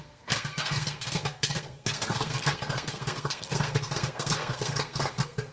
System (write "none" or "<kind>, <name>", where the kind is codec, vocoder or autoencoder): codec, SNAC